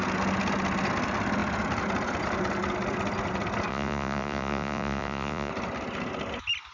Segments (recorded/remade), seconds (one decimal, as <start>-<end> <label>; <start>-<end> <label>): 0.0-3.7 recorded; 3.7-5.5 remade; 5.5-6.7 recorded

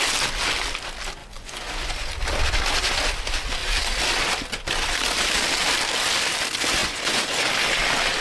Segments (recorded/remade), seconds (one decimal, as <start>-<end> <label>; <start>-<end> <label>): 0.0-1.2 recorded; 1.2-2.1 remade; 2.1-6.8 recorded; 6.8-7.5 remade; 7.5-8.2 recorded

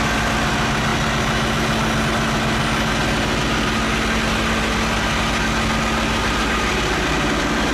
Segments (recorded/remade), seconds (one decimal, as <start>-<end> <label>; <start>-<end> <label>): 0.0-7.7 recorded

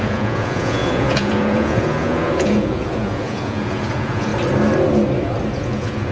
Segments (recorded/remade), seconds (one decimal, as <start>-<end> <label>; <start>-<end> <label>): 0.0-4.3 remade; 4.3-5.5 recorded; 5.5-6.1 remade

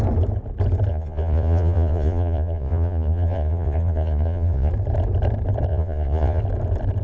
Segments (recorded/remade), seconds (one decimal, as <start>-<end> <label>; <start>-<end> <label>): 0.0-0.9 recorded; 0.9-4.7 remade; 4.7-5.7 recorded; 5.7-6.4 remade; 6.4-7.0 recorded

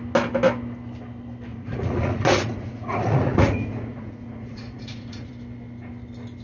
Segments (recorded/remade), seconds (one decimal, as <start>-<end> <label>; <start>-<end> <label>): 0.0-1.5 recorded; 1.5-5.3 remade; 5.3-6.4 recorded

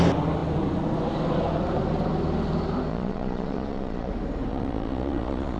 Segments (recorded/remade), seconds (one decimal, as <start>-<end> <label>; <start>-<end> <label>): 0.0-2.9 recorded; 2.9-4.1 remade; 4.1-4.5 recorded; 4.5-5.6 remade